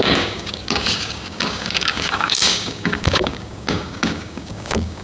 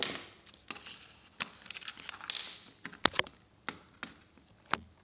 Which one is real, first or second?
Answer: second